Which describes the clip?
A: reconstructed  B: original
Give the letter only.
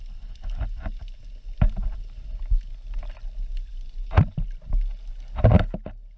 B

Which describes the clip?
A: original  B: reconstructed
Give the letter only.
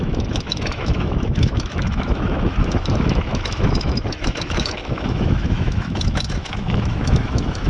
B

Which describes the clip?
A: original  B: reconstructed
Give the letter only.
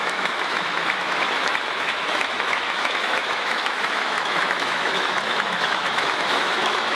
B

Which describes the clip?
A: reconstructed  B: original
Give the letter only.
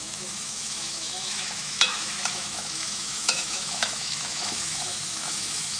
A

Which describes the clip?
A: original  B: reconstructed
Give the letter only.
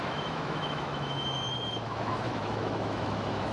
B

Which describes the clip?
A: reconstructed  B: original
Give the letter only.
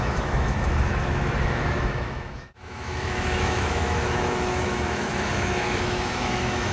A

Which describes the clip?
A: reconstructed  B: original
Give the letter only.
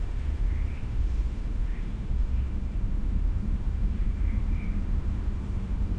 A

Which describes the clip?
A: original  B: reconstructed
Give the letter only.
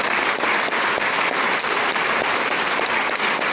A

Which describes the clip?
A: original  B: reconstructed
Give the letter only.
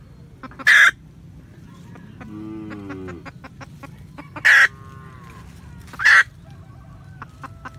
A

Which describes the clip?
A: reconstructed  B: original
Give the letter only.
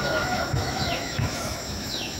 A